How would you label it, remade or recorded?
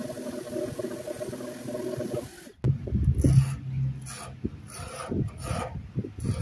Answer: recorded